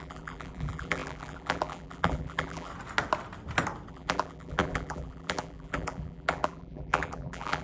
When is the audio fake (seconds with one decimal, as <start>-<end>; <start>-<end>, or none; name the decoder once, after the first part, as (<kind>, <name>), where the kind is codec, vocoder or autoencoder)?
0.0-2.7 (vocoder, BigVGAN v2); 3.9-7.6

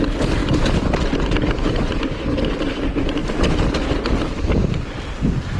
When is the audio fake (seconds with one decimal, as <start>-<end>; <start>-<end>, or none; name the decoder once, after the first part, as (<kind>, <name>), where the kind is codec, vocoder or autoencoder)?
none

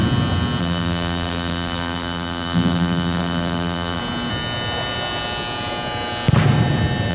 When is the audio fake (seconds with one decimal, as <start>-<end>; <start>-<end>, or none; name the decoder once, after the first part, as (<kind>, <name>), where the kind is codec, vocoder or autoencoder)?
0.6-4.0 (vocoder, BigVGAN v2)